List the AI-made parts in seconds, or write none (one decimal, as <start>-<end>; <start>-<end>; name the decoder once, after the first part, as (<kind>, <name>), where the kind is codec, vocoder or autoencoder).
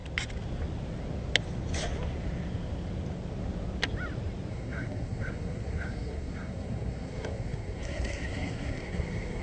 4.5-9.4 (codec, SNAC)